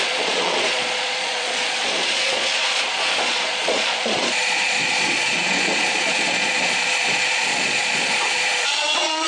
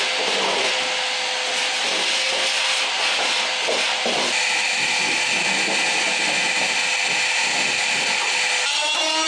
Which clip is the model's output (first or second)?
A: first